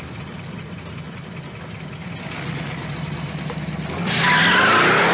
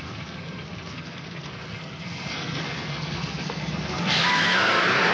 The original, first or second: first